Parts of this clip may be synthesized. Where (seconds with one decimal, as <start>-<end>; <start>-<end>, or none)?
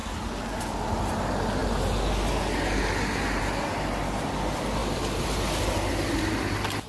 none